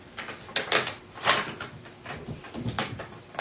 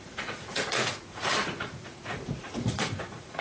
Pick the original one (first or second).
first